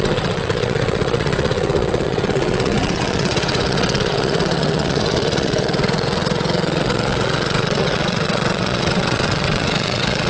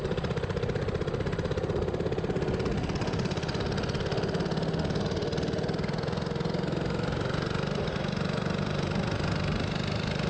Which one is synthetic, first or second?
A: first